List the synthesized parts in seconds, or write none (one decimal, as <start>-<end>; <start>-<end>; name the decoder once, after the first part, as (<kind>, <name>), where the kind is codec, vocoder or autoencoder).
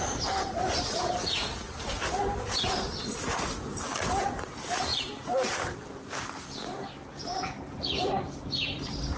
0.0-1.4 (vocoder, BigVGAN v2); 2.2-4.9; 7.1-9.2